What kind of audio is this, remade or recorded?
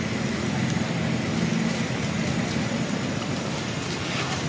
recorded